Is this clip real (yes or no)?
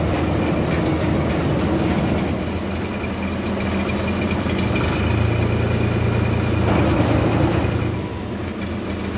yes